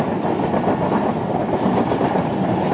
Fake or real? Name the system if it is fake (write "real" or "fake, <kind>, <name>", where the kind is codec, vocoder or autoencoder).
real